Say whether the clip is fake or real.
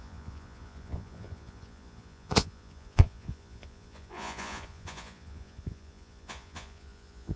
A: fake